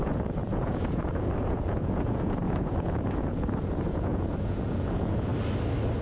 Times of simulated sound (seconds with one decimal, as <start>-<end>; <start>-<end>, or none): 0.0-5.3